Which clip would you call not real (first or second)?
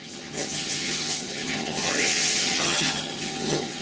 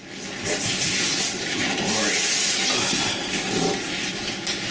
first